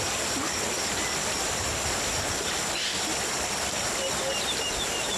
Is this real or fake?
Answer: real